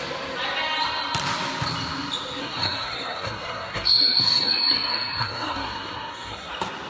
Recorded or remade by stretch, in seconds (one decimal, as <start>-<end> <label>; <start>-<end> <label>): 0.0-2.4 recorded; 2.4-6.5 remade; 6.5-6.9 recorded